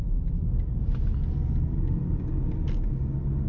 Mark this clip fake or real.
real